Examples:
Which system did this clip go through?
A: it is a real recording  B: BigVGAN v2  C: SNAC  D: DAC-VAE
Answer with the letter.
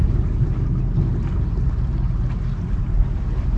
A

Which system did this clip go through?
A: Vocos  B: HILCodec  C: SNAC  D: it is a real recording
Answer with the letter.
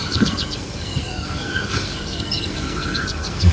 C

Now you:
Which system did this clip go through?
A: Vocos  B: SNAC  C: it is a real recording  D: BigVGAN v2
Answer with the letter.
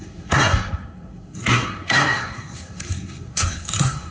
B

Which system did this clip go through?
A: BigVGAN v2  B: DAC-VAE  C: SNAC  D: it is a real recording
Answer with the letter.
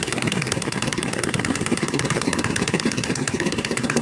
C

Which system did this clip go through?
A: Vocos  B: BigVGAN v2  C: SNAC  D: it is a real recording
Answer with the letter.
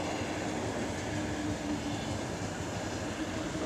D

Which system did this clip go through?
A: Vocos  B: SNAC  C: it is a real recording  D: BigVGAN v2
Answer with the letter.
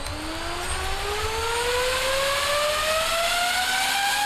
C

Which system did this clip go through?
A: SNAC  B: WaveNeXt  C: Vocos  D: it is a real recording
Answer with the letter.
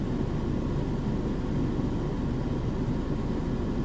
D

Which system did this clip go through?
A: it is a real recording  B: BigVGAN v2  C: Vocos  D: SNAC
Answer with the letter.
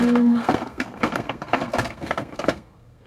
D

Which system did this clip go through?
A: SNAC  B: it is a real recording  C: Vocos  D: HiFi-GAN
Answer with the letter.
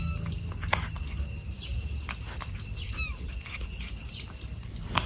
B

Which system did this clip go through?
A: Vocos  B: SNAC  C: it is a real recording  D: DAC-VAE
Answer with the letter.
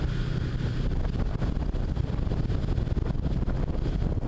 C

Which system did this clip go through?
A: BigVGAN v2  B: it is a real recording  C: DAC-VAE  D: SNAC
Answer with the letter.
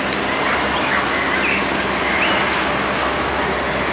B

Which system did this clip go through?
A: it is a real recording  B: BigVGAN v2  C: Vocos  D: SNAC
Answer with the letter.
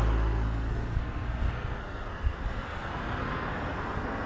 D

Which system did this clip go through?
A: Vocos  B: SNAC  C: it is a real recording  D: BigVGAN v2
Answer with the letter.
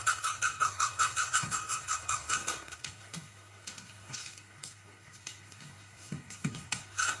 B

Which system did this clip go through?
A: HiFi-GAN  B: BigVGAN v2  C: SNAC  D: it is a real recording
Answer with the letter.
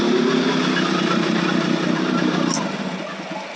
D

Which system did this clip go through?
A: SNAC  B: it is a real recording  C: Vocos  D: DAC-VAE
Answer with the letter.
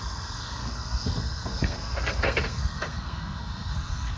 A